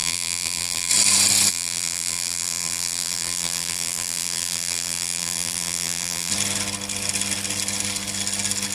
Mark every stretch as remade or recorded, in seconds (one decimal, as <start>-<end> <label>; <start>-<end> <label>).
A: 0.0-0.9 remade; 0.9-1.5 recorded; 1.5-6.3 remade; 6.3-8.7 recorded